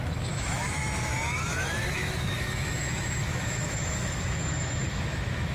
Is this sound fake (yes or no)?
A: yes